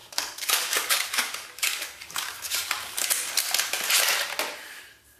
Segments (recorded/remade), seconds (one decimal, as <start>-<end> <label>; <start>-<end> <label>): 0.0-3.1 remade; 3.1-5.2 recorded